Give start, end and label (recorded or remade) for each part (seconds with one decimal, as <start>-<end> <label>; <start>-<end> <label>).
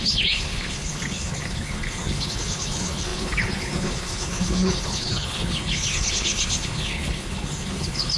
0.0-8.2 remade